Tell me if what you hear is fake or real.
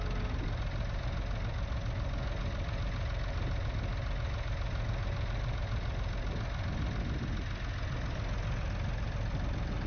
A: real